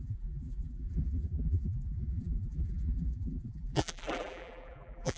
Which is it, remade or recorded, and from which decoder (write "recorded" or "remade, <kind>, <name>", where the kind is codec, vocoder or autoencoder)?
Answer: remade, vocoder, BigVGAN v2